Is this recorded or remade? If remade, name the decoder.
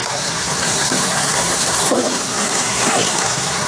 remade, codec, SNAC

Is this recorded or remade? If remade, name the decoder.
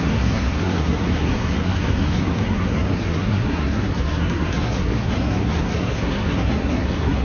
remade, codec, SNAC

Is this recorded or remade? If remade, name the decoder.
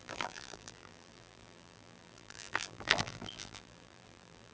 remade, vocoder, BigVGAN v2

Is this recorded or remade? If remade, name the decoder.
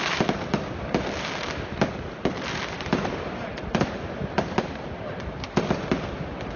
recorded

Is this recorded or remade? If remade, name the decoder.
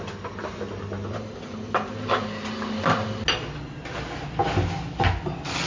recorded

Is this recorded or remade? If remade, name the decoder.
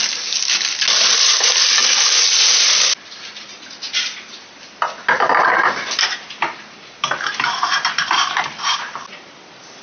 recorded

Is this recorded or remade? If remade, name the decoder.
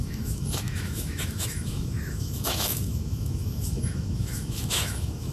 remade, autoencoder, DAC-VAE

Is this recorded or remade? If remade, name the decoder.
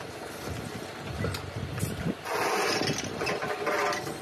recorded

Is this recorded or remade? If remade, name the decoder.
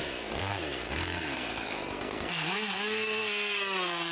remade, codec, SNAC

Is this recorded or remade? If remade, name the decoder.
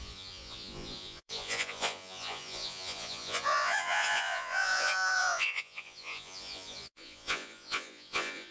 remade, vocoder, Vocos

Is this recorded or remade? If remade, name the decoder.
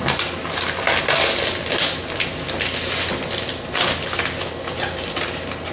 recorded